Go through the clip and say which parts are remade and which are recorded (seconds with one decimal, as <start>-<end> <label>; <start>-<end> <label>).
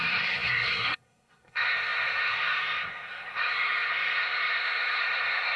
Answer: 0.0-5.6 remade